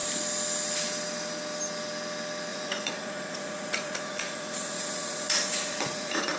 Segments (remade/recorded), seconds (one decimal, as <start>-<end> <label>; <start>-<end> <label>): 0.0-2.5 recorded; 2.5-6.4 remade